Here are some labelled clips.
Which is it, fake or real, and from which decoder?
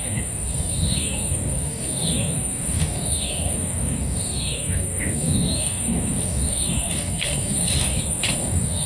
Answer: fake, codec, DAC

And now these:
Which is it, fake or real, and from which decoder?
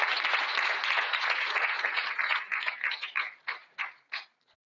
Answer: fake, vocoder, Vocos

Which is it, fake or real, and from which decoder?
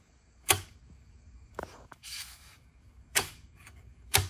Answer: fake, codec, DAC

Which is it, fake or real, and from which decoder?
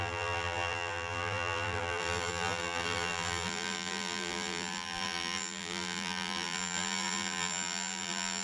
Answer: fake, vocoder, BigVGAN v2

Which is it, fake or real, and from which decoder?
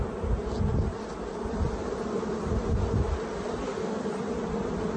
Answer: real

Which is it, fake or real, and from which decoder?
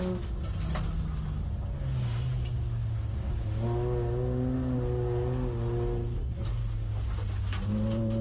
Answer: real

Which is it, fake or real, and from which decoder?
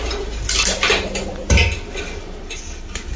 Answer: real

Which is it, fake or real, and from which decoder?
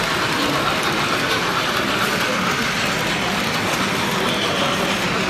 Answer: real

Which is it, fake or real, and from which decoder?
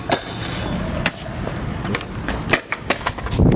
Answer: real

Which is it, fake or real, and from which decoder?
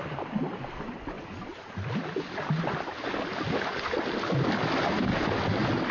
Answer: real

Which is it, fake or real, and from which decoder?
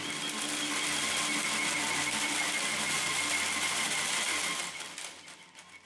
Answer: real